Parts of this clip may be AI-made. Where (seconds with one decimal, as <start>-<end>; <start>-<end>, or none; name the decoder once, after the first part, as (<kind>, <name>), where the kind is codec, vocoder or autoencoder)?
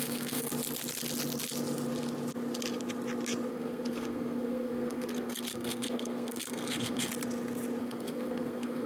0.0-0.5 (codec, SNAC); 3.5-7.1; 7.8-8.9